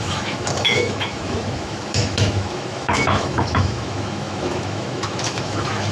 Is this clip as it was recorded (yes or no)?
no